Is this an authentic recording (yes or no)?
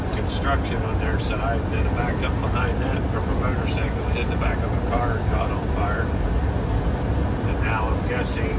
yes